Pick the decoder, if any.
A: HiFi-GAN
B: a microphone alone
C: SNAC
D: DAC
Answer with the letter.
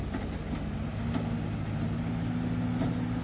B